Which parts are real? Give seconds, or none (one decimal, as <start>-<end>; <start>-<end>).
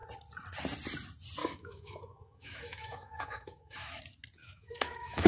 0.0-1.4; 4.0-4.4